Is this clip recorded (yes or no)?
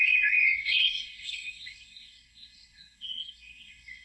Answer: no